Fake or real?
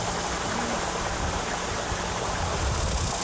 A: real